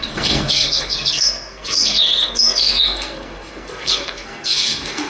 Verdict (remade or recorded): remade